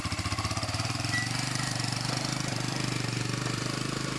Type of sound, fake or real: fake